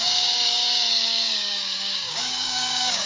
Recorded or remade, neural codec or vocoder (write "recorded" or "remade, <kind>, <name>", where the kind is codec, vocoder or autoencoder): remade, codec, DAC